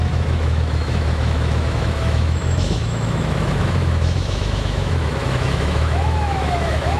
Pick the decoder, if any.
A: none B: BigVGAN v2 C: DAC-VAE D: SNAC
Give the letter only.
C